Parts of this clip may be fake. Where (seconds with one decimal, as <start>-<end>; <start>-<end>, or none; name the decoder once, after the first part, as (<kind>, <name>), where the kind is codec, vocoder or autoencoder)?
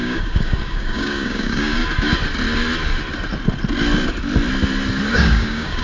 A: 0.0-1.8 (codec, DAC); 5.1-5.8